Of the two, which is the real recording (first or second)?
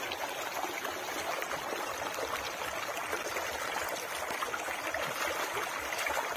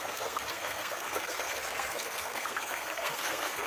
first